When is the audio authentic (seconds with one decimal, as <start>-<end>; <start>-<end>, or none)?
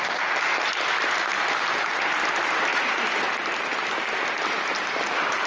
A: none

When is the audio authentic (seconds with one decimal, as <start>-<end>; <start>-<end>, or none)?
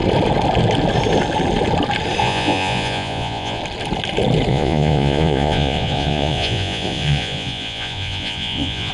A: 0.0-2.2; 3.6-4.5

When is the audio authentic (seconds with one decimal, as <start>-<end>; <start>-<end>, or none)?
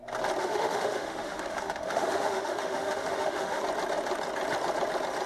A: 0.0-0.4; 3.6-5.3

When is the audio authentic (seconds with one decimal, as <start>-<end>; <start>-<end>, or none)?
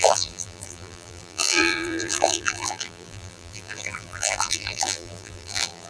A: none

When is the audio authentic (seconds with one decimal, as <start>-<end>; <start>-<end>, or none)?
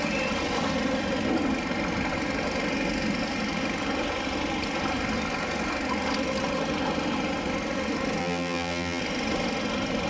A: 0.0-8.2; 9.0-10.1